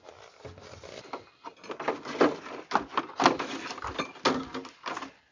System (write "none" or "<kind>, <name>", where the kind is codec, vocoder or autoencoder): none